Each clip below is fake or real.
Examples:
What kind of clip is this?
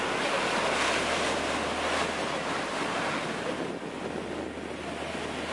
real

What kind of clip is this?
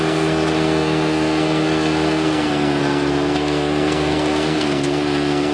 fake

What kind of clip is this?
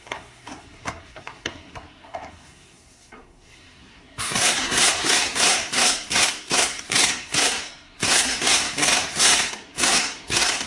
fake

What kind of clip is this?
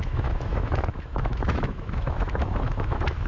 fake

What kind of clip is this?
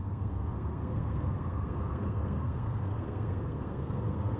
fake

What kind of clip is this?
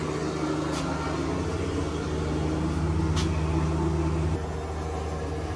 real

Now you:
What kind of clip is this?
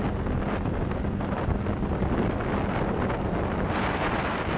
real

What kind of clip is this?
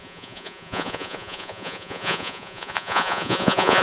fake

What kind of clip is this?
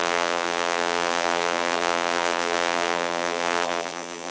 fake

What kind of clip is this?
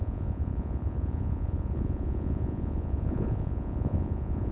fake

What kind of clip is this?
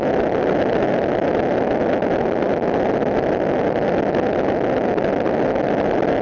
real